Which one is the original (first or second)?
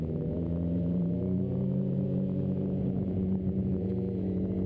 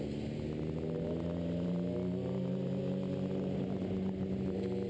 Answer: second